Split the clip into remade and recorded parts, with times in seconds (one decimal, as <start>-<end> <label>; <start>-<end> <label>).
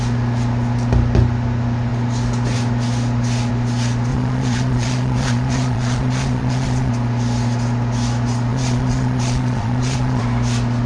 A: 0.0-4.1 recorded; 4.1-6.9 remade; 6.9-8.5 recorded; 8.5-10.2 remade; 10.2-10.9 recorded